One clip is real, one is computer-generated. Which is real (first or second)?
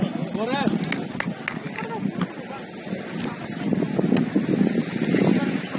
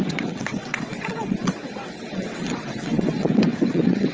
first